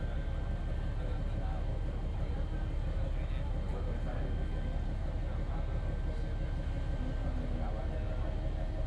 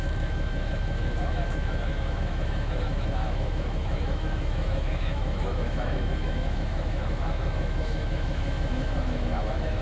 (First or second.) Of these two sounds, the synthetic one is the second